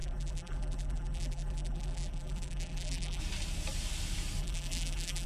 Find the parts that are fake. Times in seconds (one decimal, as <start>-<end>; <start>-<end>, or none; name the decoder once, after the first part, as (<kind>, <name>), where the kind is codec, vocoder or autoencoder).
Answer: 0.0-3.2 (vocoder, BigVGAN v2); 4.4-5.3